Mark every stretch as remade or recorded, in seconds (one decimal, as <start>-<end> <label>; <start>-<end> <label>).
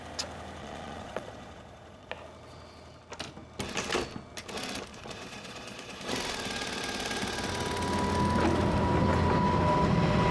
0.0-0.6 recorded; 0.6-2.1 remade; 2.1-4.9 recorded; 4.9-6.1 remade; 6.1-10.3 recorded